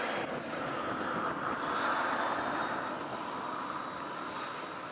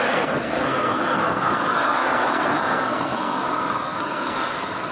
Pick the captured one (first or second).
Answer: first